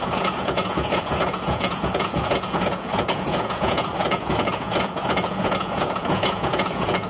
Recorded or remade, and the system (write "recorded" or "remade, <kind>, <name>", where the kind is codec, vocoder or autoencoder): remade, vocoder, Vocos